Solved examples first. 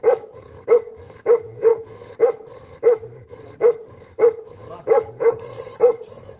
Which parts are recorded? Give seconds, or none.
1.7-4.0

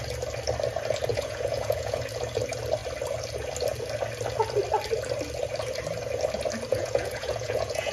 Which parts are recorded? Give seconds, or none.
0.0-1.1; 2.0-6.7

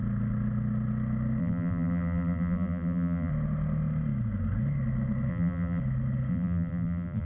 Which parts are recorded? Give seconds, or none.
0.0-1.4; 3.3-5.3; 5.8-6.3

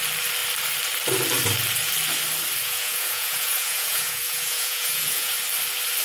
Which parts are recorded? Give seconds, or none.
0.0-2.6; 5.3-6.0

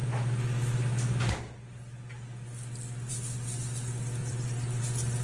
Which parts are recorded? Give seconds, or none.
0.0-4.2; 4.8-5.2

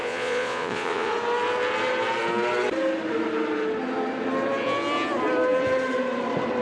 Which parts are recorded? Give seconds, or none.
1.1-6.6

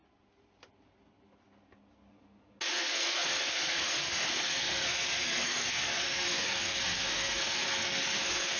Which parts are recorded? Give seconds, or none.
0.0-2.7